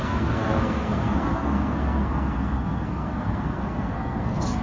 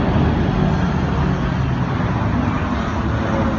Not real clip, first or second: first